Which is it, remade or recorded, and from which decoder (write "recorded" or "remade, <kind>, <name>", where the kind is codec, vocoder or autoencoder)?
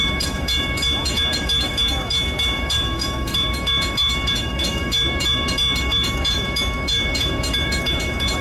remade, autoencoder, DAC-VAE